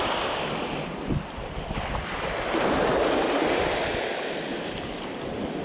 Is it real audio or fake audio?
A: real